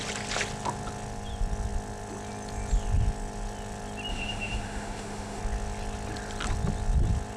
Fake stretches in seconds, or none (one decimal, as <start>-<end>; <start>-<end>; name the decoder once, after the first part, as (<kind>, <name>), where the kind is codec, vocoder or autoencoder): 4.1-5.4 (autoencoder, DAC-VAE)